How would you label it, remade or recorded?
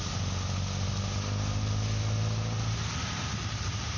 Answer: recorded